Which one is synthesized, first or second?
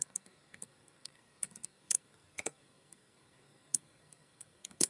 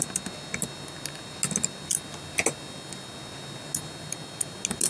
first